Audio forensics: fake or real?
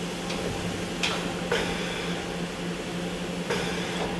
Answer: real